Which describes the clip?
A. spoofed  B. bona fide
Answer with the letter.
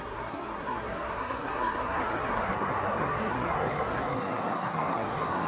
A